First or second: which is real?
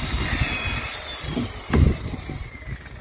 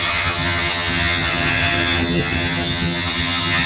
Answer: first